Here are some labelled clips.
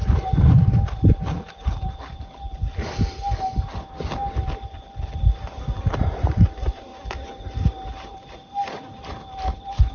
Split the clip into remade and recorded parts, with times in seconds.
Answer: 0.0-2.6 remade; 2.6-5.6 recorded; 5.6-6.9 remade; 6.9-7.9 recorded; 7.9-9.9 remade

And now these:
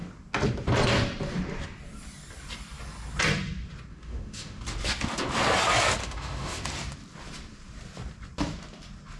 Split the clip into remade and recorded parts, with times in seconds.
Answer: 0.0-3.9 recorded; 3.9-4.6 remade; 4.6-6.0 recorded; 6.0-6.6 remade; 6.6-9.2 recorded

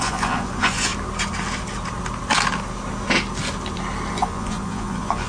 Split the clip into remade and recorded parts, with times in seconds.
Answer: 0.0-0.9 remade; 0.9-4.1 recorded; 4.1-5.3 remade

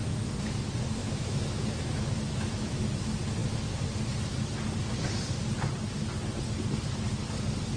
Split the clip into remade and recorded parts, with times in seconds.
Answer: 0.0-0.6 remade; 0.6-1.0 recorded; 1.0-2.7 remade; 2.7-7.8 recorded

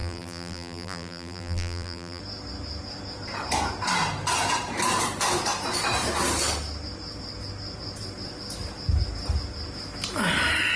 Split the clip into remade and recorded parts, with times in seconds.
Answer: 0.0-2.2 remade; 2.2-10.8 recorded

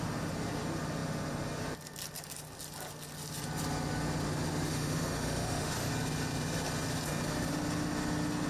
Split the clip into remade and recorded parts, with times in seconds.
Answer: 0.0-4.7 recorded; 4.7-5.9 remade; 5.9-8.5 recorded

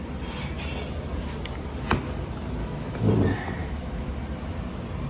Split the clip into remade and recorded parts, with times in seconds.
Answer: 0.0-2.6 recorded; 2.6-3.1 remade; 3.1-3.6 recorded; 3.6-4.2 remade; 4.2-5.1 recorded

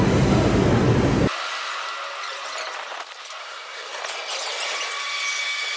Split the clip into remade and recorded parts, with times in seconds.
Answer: 0.0-3.4 recorded; 3.4-4.0 remade; 4.0-5.8 recorded